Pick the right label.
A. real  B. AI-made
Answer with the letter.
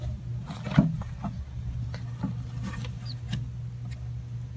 A